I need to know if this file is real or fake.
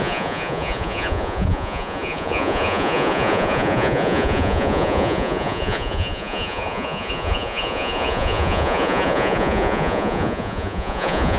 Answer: fake